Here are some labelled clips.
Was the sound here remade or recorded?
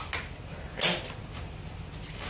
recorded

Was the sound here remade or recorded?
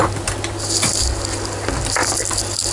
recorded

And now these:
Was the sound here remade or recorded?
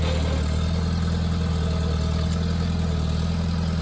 recorded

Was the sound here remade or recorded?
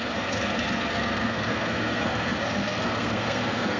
remade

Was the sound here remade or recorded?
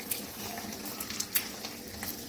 recorded